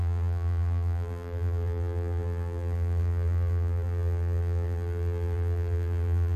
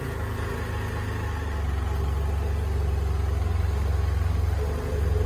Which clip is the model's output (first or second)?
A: first